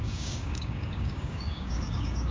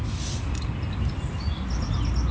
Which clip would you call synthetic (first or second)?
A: first